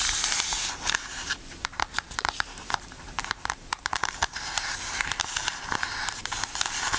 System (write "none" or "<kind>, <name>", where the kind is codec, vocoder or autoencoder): vocoder, BigVGAN v2